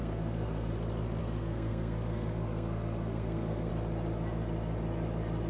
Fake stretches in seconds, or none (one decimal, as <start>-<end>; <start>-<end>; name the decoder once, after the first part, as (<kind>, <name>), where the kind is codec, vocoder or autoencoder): 0.0-0.7 (codec, SNAC); 1.2-3.7